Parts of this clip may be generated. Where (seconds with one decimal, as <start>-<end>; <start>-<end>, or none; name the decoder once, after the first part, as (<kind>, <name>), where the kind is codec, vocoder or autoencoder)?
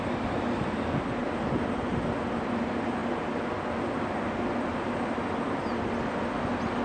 none